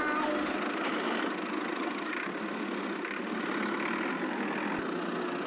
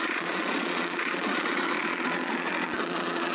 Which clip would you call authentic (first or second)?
first